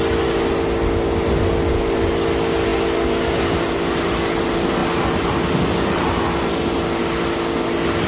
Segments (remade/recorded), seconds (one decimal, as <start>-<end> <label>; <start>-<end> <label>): 0.0-8.1 recorded

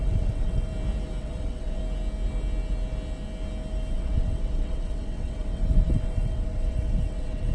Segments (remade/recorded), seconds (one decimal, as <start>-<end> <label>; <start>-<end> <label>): 0.0-0.7 remade; 0.7-1.2 recorded; 1.2-1.8 remade; 1.8-3.9 recorded; 3.9-7.5 remade

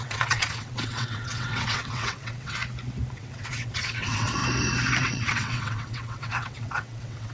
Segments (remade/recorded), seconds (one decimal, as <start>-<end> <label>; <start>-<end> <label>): 0.0-2.6 remade; 2.6-3.1 recorded; 3.1-4.4 remade; 4.4-5.0 recorded; 5.0-7.3 remade

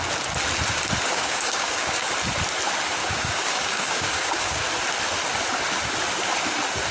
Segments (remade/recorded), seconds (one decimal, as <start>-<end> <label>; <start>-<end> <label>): 0.0-1.1 recorded; 1.1-2.1 remade; 2.1-3.0 recorded; 3.0-4.6 remade; 4.6-6.9 recorded

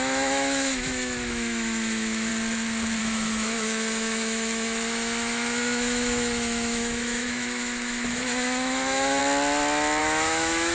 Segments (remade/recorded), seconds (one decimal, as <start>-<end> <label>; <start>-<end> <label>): 0.0-2.3 remade; 2.3-3.0 recorded; 3.0-9.2 remade; 9.2-10.0 recorded; 10.0-10.7 remade

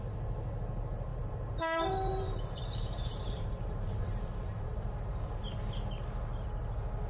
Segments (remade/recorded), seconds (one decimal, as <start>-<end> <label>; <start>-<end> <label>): 0.0-1.1 recorded; 1.1-5.4 remade; 5.4-7.1 recorded

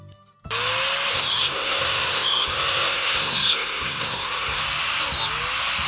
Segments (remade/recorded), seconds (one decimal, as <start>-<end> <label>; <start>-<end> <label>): 0.0-1.1 recorded; 1.1-4.6 remade; 4.6-5.9 recorded

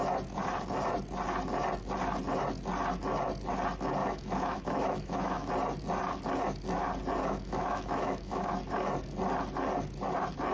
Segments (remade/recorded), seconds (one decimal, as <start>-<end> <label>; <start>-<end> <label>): 0.0-4.0 recorded; 4.0-5.5 remade; 5.5-7.2 recorded; 7.2-8.5 remade; 8.5-10.5 recorded